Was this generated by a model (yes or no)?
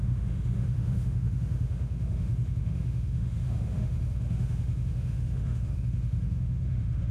yes